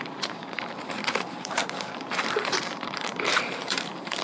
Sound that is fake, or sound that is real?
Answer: fake